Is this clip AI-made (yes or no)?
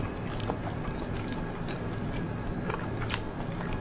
no